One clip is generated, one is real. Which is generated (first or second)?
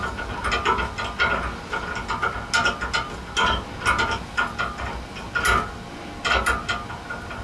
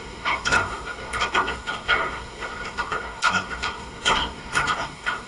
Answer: second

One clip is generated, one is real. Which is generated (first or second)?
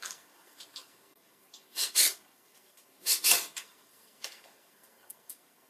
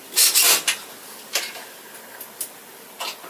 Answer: first